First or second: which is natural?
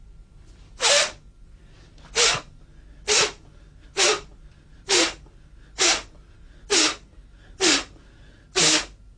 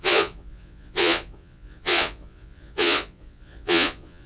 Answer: first